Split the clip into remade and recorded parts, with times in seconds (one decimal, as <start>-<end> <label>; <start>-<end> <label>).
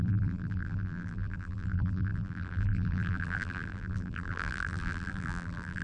0.0-5.8 remade